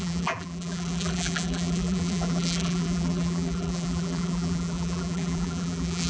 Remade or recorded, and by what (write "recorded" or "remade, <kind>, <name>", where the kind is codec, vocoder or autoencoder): remade, vocoder, BigVGAN v2